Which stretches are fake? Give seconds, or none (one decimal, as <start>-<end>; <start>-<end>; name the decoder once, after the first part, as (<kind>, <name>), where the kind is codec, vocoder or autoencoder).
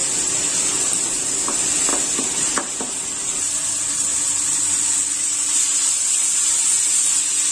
none